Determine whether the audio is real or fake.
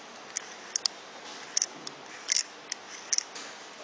real